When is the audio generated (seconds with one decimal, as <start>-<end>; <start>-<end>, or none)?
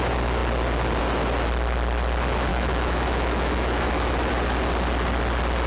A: 2.5-4.3